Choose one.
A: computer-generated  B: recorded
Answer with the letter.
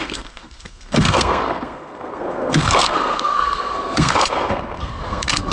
A